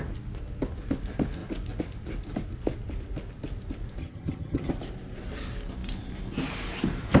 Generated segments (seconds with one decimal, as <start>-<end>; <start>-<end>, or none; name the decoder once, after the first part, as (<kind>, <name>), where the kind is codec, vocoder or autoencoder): 4.0-4.7 (vocoder, HiFi-GAN)